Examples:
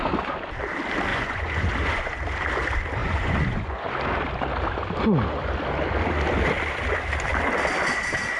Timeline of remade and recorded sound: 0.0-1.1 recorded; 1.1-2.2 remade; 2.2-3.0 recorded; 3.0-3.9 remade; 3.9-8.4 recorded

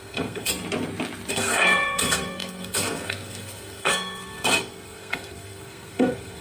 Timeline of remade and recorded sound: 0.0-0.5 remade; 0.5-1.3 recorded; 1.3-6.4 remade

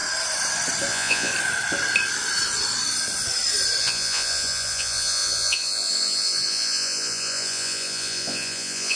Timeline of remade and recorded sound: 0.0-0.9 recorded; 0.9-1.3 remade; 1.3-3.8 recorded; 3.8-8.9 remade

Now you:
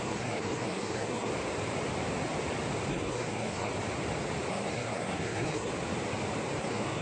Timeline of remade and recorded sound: 0.0-1.3 remade; 1.3-2.9 recorded; 2.9-3.7 remade; 3.7-4.5 recorded; 4.5-5.7 remade; 5.7-6.6 recorded; 6.6-7.0 remade

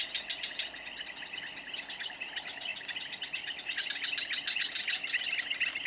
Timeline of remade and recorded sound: 0.0-5.9 recorded

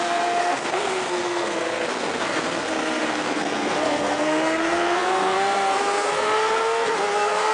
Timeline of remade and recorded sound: 0.0-7.5 remade